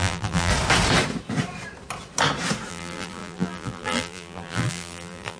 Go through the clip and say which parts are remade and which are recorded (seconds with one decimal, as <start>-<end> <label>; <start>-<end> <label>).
0.0-0.5 remade; 0.5-2.7 recorded; 2.7-5.4 remade